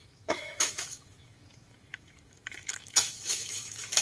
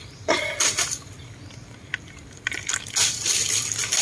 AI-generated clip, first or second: first